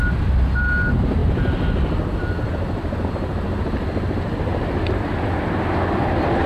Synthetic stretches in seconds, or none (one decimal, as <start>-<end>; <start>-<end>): 1.2-5.1